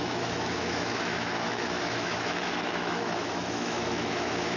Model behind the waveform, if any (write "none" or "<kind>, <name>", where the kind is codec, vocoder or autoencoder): autoencoder, DAC-VAE